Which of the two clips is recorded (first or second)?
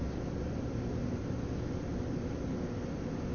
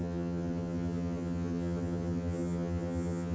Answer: first